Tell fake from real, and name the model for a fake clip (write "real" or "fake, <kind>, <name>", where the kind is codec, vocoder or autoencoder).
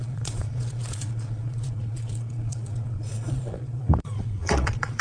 fake, vocoder, Vocos